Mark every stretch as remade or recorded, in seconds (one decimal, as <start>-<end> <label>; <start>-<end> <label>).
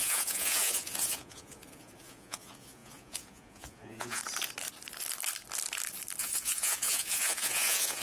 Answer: 0.0-4.2 remade; 4.2-6.2 recorded; 6.2-8.0 remade